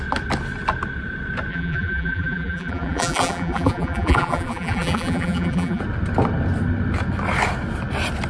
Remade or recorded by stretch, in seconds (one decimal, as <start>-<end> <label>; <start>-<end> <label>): 0.0-1.5 recorded; 1.5-5.8 remade; 5.8-8.3 recorded